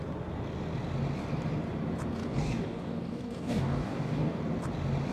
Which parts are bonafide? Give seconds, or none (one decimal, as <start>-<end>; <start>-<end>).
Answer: 0.0-2.2; 4.4-5.1